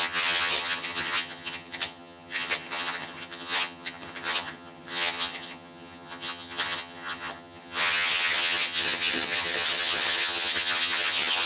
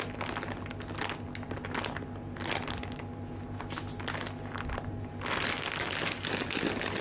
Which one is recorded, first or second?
second